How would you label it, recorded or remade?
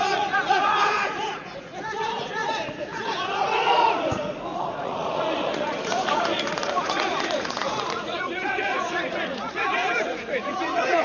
remade